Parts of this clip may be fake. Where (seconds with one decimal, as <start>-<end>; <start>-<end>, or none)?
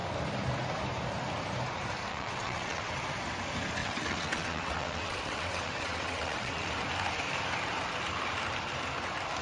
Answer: 2.1-2.9; 3.8-6.7